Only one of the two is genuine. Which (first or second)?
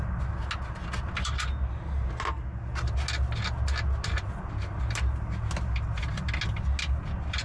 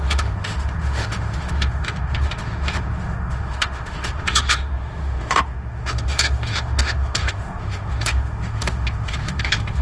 first